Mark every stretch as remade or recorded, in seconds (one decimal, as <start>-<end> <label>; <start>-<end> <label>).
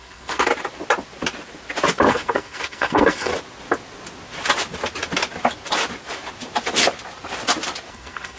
0.0-0.5 remade; 0.5-2.1 recorded; 2.1-3.3 remade; 3.3-7.9 recorded; 7.9-8.4 remade